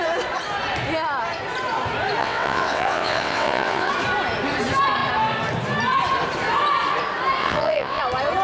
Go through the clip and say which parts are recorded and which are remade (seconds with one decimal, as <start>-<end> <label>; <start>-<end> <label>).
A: 0.0-2.2 recorded; 2.2-3.9 remade; 3.9-7.4 recorded; 7.4-8.0 remade; 8.0-8.4 recorded